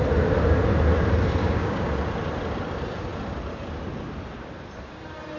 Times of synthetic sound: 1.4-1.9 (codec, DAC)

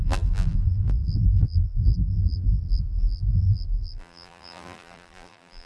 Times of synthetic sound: 0.0-5.7 (vocoder, BigVGAN v2)

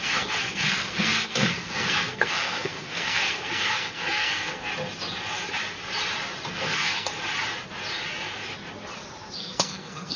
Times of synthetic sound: 0.0-4.7 (codec, SNAC); 6.5-7.1; 9.4-10.2

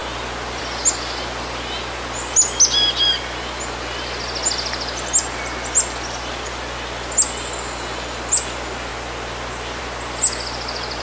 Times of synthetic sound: none